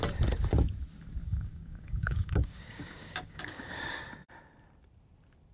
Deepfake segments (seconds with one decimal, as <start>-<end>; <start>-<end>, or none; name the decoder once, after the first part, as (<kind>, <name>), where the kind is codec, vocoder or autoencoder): 1.2-4.1 (codec, DAC)